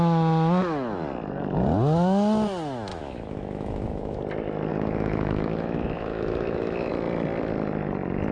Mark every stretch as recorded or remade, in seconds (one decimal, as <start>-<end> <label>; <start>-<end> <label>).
0.0-2.9 recorded; 2.9-4.2 remade; 4.2-4.7 recorded; 4.7-6.9 remade; 6.9-8.3 recorded

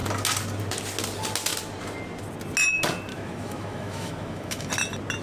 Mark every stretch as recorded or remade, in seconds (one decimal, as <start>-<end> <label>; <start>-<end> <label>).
0.0-3.1 recorded; 3.1-4.7 remade; 4.7-5.2 recorded

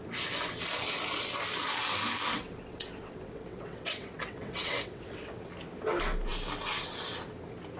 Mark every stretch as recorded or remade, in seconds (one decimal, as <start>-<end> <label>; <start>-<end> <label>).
0.0-2.3 recorded; 2.3-5.5 remade; 5.5-7.8 recorded